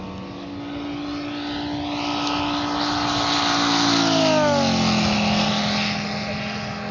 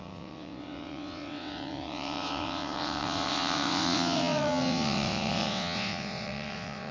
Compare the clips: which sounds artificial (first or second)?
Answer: second